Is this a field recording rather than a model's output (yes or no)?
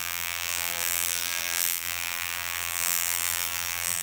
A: no